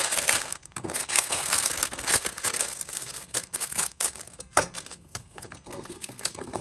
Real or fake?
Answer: fake